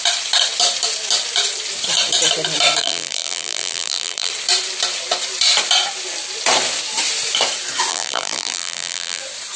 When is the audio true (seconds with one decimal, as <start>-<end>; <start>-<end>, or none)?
0.0-2.8; 4.3-7.9; 9.2-9.6